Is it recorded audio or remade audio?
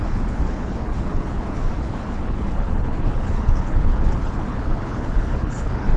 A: remade